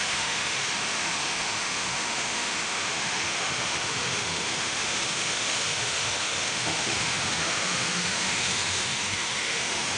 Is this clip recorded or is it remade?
remade